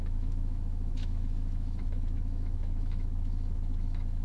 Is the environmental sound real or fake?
fake